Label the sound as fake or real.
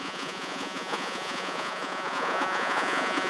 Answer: fake